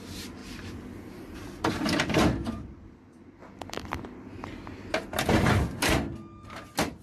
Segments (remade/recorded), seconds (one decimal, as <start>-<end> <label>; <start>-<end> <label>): 0.0-0.4 recorded; 0.4-1.7 remade; 1.7-3.4 recorded; 3.4-4.0 remade; 4.0-7.0 recorded